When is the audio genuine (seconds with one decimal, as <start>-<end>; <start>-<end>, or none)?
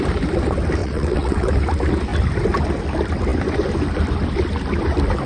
0.0-0.8; 1.5-5.3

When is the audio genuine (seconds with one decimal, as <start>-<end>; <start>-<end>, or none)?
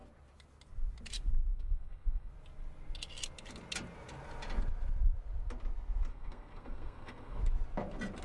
0.0-1.5; 2.3-6.1; 7.4-8.2